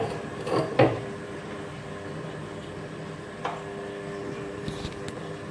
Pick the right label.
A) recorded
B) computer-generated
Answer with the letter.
A